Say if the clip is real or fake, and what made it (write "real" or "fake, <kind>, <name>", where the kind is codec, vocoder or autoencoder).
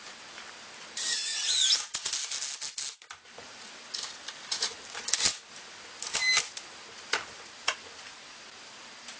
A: real